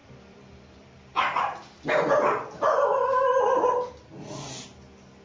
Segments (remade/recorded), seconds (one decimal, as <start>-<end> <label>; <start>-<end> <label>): 0.0-1.4 remade; 1.4-5.2 recorded

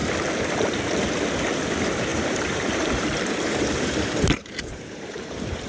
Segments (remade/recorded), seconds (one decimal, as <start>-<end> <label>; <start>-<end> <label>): 0.0-1.5 recorded; 1.5-5.7 remade

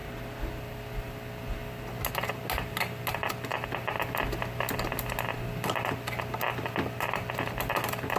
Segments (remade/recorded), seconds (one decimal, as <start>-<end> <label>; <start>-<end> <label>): 0.0-8.2 recorded